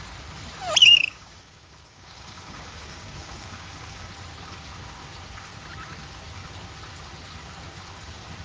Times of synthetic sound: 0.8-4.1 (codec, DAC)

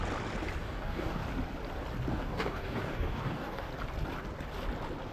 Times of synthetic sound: 0.6-1.2 (codec, DAC); 2.1-3.7

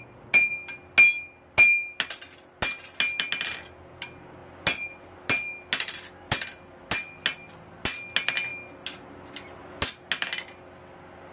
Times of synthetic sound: none